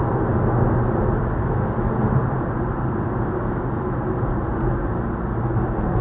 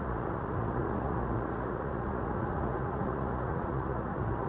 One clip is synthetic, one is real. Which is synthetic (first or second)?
second